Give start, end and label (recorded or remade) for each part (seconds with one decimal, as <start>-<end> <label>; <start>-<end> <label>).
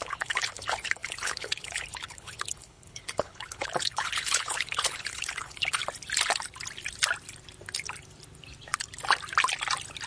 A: 0.0-5.8 remade; 5.8-10.1 recorded